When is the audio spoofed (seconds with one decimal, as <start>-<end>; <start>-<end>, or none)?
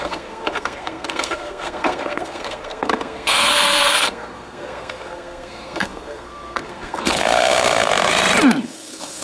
0.0-7.9; 8.6-9.2